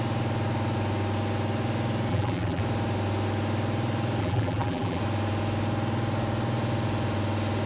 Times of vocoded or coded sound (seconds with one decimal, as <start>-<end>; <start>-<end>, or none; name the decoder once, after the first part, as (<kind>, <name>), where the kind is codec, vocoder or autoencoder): 2.1-2.6 (vocoder, BigVGAN v2); 4.2-5.0